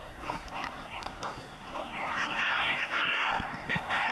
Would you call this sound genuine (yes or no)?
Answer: no